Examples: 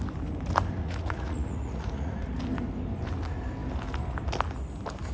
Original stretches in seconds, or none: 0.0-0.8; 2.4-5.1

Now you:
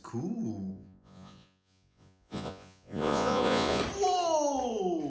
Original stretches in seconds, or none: 0.0-0.7; 3.8-5.1

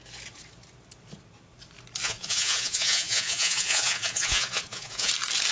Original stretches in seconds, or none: 0.0-2.0; 5.1-5.5

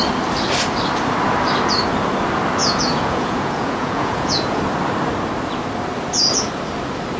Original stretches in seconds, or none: 0.0-2.6; 4.6-7.2

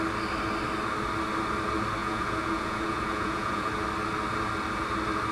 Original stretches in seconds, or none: 0.0-2.0; 3.7-5.3